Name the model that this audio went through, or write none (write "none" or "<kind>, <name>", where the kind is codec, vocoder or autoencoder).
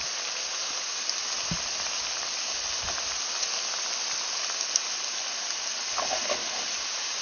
none